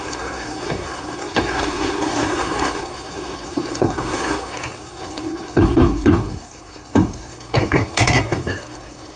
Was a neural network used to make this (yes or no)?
yes